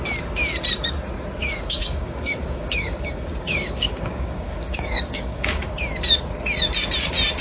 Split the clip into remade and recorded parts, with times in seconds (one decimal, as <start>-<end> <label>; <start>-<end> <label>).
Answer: 0.0-1.4 recorded; 1.4-5.8 remade; 5.8-7.4 recorded